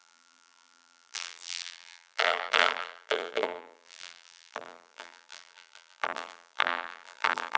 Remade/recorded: remade